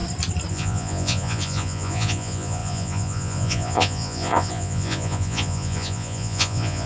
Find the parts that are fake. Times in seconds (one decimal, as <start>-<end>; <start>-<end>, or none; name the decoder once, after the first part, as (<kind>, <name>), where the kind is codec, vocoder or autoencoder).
0.5-6.9 (vocoder, Vocos)